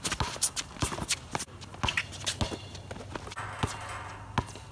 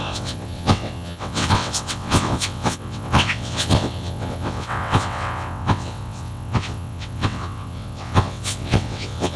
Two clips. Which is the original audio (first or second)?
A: first